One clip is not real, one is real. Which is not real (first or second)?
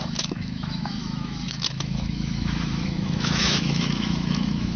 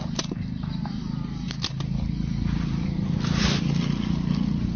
first